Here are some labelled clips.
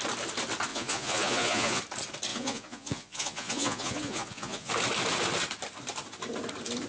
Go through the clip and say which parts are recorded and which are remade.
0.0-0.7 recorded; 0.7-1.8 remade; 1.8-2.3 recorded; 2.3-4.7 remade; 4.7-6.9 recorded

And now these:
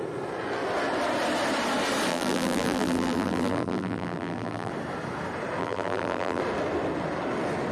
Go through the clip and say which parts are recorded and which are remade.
0.0-2.1 recorded; 2.1-4.7 remade; 4.7-5.6 recorded; 5.6-6.4 remade; 6.4-7.7 recorded

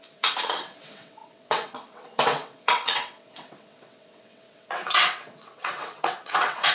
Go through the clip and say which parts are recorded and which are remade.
0.0-6.7 remade